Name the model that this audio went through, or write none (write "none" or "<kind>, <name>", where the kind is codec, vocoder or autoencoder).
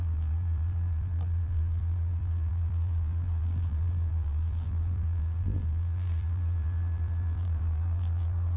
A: vocoder, BigVGAN v2